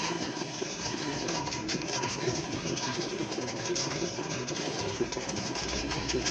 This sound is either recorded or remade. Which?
remade